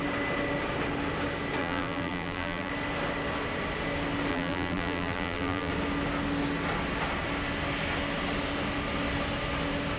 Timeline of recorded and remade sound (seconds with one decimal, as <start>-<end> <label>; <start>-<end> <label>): 0.0-1.6 recorded; 1.6-2.7 remade; 2.7-4.3 recorded; 4.3-5.7 remade; 5.7-10.0 recorded

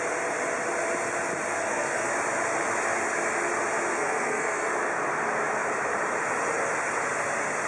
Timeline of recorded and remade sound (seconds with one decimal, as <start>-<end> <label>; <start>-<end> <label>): 0.0-1.6 recorded; 1.6-2.1 remade; 2.1-3.9 recorded; 3.9-4.7 remade; 4.7-7.7 recorded

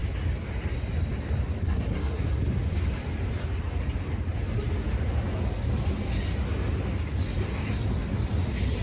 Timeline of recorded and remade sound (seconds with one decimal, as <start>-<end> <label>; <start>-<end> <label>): 0.0-1.6 recorded; 1.6-2.2 remade; 2.2-8.8 recorded

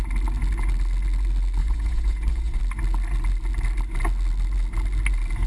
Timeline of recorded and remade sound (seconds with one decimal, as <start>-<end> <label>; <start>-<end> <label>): 0.0-1.6 recorded; 1.6-2.6 remade; 2.6-5.5 recorded